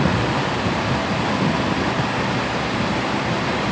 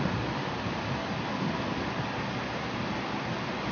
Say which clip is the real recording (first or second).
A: second